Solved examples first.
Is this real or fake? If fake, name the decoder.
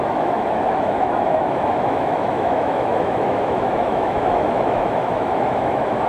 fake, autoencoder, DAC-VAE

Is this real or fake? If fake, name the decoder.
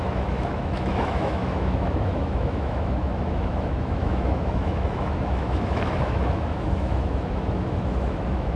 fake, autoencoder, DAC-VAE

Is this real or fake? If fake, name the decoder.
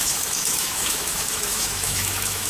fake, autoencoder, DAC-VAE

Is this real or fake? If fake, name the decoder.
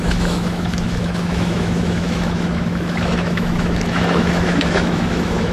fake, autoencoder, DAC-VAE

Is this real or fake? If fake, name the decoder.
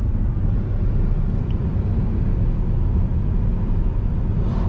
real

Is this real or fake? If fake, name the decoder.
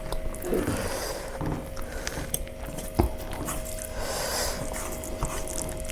real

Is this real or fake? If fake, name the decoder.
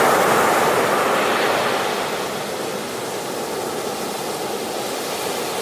real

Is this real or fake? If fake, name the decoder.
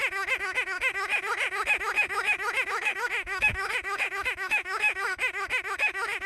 fake, autoencoder, DAC-VAE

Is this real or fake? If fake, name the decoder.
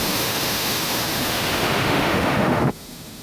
fake, autoencoder, DAC-VAE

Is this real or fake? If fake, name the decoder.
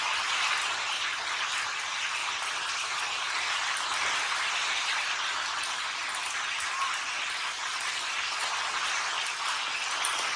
real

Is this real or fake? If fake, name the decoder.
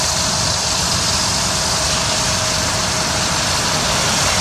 real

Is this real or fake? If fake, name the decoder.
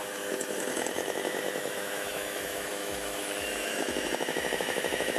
fake, autoencoder, DAC-VAE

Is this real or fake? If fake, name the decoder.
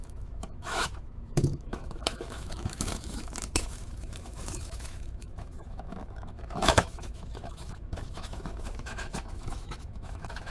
fake, autoencoder, DAC-VAE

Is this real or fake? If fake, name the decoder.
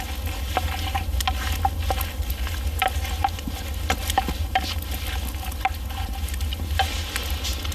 real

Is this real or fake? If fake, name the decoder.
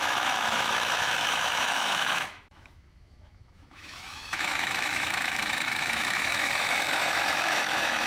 fake, autoencoder, DAC-VAE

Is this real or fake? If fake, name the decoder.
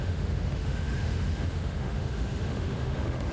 fake, autoencoder, DAC-VAE